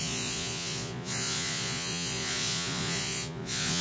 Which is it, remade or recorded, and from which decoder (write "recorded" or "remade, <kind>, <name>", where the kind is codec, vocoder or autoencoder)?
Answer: remade, vocoder, Vocos